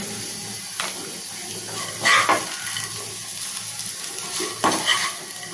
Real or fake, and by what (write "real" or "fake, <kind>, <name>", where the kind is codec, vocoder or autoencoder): real